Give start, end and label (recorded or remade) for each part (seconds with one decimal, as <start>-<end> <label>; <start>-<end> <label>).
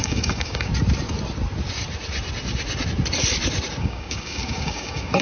0.0-0.7 remade; 0.7-3.8 recorded; 3.8-5.2 remade